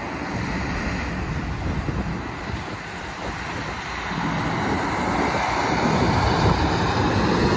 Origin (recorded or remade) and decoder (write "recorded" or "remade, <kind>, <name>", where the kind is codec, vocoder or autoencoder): recorded